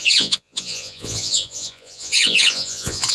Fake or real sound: fake